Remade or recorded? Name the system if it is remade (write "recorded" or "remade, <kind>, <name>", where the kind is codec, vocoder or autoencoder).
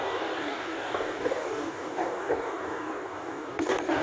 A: remade, codec, DAC